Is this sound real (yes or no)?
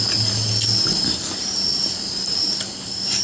yes